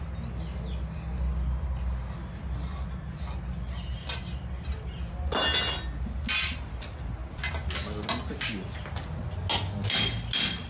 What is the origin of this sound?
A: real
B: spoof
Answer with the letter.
A